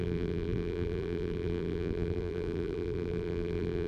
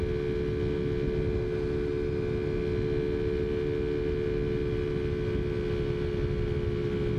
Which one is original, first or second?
second